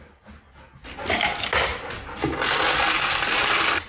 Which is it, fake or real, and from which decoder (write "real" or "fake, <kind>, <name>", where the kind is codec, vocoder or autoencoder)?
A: real